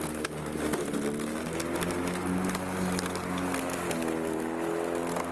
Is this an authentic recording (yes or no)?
yes